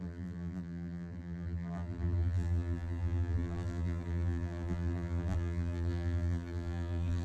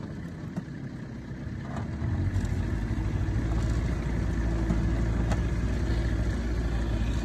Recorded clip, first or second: second